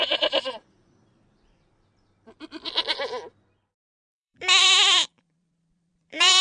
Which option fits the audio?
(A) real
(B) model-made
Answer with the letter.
B